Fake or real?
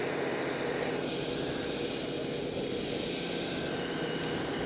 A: real